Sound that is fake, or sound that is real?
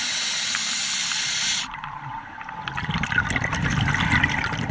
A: real